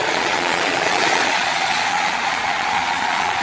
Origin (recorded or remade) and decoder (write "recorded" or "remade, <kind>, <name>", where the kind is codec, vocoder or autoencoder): remade, vocoder, Vocos